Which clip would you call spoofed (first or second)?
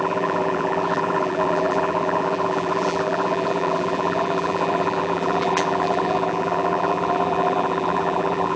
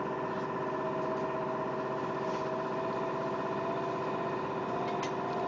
first